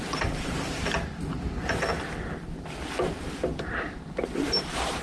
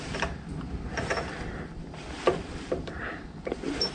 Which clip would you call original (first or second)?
first